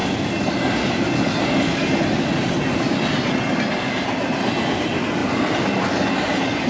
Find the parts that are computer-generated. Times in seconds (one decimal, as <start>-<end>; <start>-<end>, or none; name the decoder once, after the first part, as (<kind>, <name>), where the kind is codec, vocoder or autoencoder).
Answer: none